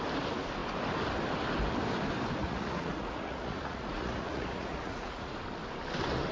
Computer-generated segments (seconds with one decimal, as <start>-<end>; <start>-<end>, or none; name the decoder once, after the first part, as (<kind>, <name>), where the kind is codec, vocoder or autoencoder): 2.4-5.3 (vocoder, Vocos)